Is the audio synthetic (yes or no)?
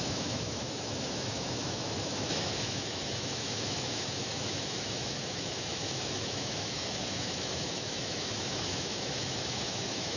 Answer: yes